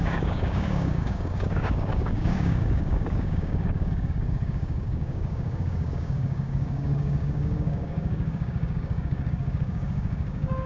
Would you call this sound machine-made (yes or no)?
yes